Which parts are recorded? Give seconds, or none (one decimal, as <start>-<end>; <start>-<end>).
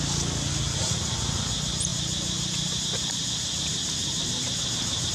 0.0-5.1